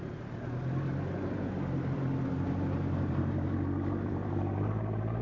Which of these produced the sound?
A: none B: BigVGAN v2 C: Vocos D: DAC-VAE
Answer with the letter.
B